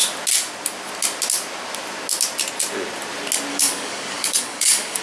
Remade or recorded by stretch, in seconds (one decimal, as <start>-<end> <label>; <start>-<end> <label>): 0.0-3.5 recorded; 3.5-5.0 remade